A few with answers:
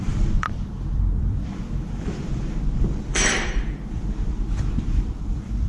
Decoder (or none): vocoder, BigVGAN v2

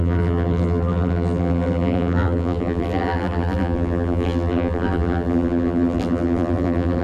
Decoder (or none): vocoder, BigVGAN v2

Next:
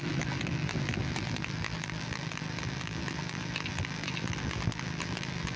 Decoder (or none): vocoder, BigVGAN v2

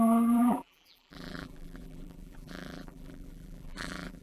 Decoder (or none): vocoder, BigVGAN v2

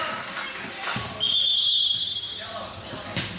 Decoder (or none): vocoder, BigVGAN v2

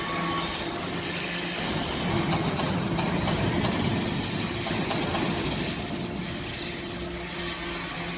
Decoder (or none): none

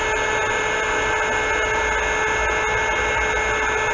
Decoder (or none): none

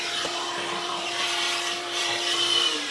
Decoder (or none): vocoder, BigVGAN v2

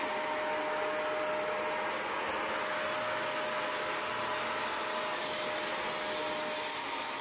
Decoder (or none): none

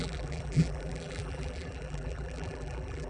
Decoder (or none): vocoder, BigVGAN v2